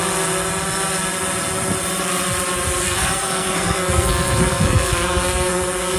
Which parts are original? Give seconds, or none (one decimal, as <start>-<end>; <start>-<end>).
0.0-2.8